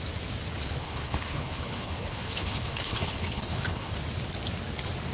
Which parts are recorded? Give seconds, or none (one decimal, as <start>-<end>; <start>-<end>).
0.0-0.8; 3.9-5.1